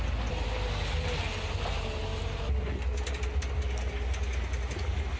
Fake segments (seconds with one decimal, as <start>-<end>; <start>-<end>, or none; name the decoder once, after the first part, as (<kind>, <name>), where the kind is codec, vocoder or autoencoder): none